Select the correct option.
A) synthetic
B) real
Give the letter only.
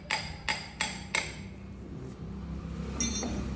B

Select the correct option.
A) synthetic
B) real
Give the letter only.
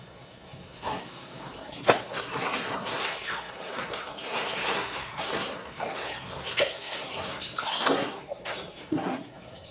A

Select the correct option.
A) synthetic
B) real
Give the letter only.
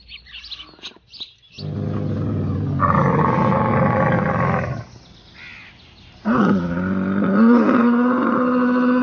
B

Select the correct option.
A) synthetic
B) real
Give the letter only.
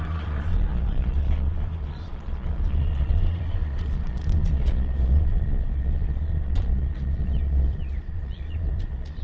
A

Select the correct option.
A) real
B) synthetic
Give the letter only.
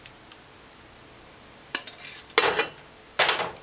A